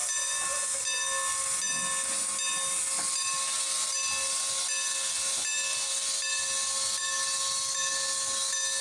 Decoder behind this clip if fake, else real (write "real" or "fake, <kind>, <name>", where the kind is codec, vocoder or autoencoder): real